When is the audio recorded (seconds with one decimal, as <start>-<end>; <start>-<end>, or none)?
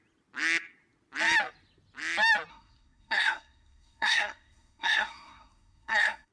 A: 0.0-2.5